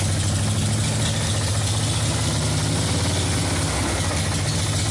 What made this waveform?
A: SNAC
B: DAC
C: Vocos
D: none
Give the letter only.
D